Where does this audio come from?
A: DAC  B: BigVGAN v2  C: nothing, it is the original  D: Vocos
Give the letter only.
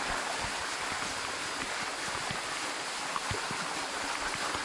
C